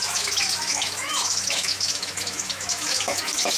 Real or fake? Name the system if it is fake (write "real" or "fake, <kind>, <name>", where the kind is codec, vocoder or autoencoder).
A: fake, autoencoder, DAC-VAE